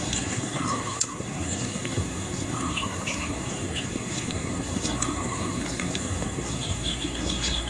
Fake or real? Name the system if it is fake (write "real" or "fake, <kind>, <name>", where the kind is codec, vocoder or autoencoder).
fake, codec, SNAC